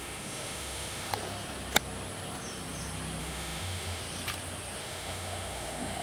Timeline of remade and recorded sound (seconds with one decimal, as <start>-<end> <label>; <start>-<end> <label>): 0.0-1.1 remade; 1.1-3.2 recorded; 3.2-4.0 remade; 4.0-4.8 recorded; 4.8-6.0 remade